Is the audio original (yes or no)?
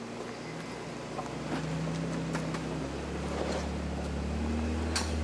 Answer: yes